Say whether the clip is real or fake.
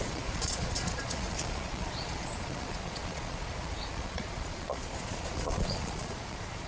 fake